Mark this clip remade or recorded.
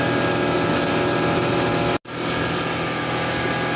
recorded